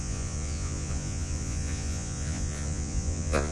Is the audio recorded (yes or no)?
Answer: no